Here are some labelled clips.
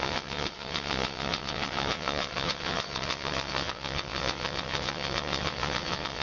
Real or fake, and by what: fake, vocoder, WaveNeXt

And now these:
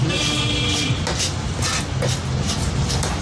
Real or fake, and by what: real